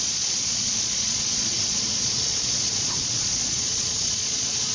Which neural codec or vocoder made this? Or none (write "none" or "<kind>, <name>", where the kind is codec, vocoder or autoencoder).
vocoder, Vocos